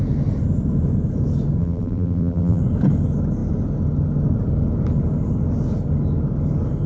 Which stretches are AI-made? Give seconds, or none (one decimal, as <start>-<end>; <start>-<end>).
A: 1.6-2.6